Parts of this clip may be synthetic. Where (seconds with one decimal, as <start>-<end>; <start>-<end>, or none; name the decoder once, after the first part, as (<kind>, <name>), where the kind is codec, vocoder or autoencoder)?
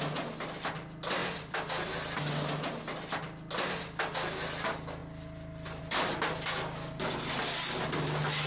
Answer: 1.2-1.9 (vocoder, BigVGAN v2)